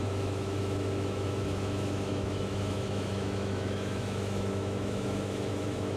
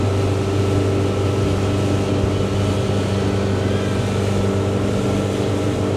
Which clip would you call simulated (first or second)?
first